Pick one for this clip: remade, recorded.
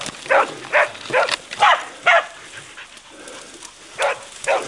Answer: recorded